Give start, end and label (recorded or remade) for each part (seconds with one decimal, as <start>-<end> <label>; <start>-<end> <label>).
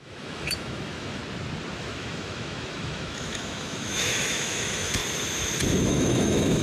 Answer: 0.0-1.2 remade; 1.2-1.8 recorded; 1.8-5.0 remade; 5.0-5.8 recorded; 5.8-6.6 remade